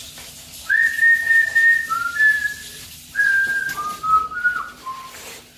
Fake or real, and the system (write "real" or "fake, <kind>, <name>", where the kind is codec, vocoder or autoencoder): real